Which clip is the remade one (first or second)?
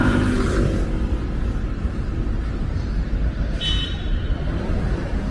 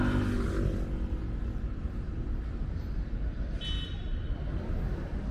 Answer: first